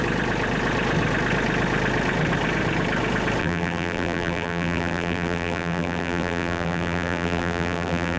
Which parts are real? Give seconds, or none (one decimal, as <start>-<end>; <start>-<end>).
0.0-3.4